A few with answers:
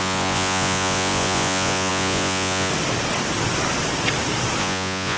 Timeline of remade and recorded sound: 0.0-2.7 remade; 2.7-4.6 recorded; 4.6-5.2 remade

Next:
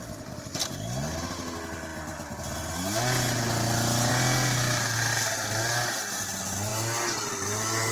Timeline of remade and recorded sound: 0.0-7.9 recorded

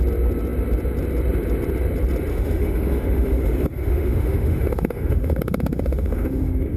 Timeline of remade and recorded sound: 0.0-2.3 recorded; 2.3-6.8 remade

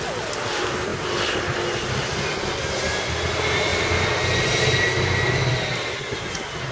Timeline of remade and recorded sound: 0.0-6.7 recorded

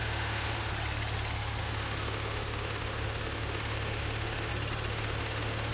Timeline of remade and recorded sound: 0.0-0.7 remade; 0.7-1.6 recorded; 1.6-4.5 remade; 4.5-4.9 recorded; 4.9-5.7 remade